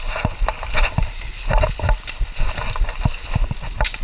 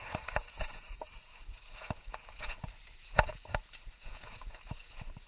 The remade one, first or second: second